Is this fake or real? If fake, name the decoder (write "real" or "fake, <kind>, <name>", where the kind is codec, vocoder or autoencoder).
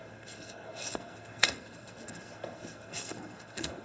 fake, codec, SNAC